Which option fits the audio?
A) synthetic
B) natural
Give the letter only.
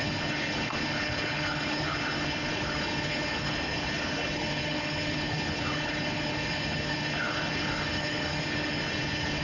A